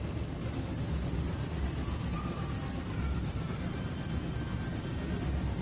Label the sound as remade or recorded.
recorded